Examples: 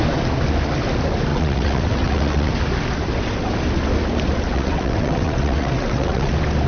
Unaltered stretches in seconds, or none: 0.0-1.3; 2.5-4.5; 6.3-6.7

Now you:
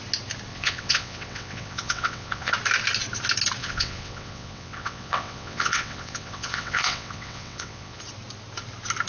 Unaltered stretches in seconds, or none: 0.0-0.5; 2.5-3.6; 8.0-9.1

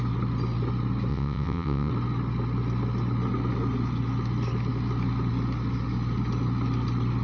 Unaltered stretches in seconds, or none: 0.0-1.1; 1.9-7.2

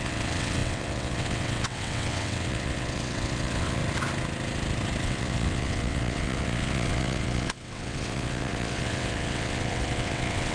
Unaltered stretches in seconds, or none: 3.8-5.0